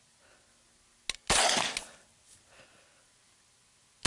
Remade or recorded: recorded